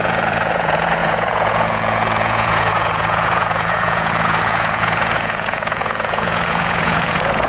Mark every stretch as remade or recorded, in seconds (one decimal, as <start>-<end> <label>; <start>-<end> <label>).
0.0-7.5 remade